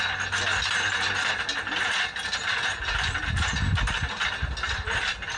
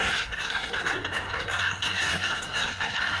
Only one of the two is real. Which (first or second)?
first